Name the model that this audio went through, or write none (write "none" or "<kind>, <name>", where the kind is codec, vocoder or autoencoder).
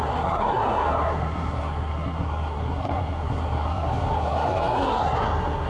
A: codec, SNAC